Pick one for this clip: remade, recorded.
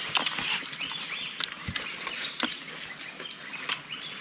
recorded